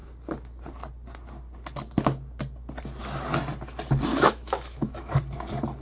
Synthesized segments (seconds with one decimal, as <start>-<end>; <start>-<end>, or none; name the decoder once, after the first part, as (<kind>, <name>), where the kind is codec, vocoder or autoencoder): 4.1-5.2 (autoencoder, DAC-VAE)